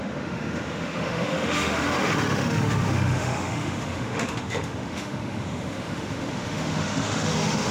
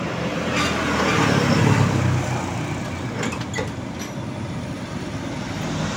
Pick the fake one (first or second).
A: first